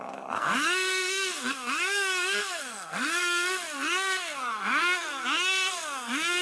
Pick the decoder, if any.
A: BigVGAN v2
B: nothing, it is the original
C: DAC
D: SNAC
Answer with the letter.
D